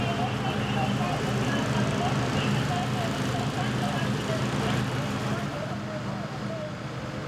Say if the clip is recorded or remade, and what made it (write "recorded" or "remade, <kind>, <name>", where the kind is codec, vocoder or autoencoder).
recorded